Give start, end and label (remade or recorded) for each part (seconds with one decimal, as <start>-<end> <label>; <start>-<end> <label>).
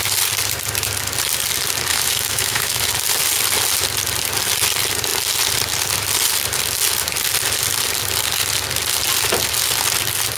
0.0-1.9 recorded; 1.9-2.9 remade; 2.9-10.4 recorded